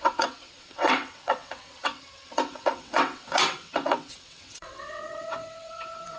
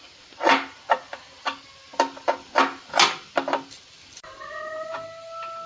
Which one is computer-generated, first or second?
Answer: first